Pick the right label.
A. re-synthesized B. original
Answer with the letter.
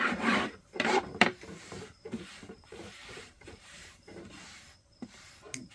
A